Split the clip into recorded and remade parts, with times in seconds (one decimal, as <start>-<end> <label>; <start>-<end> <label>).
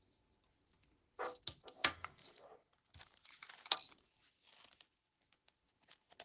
0.0-2.2 recorded; 2.2-3.2 remade; 3.2-6.2 recorded